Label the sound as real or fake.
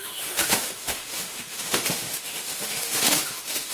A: fake